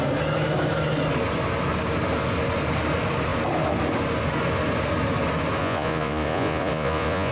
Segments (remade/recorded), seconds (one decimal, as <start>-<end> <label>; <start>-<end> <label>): 0.0-5.6 recorded; 5.6-7.3 remade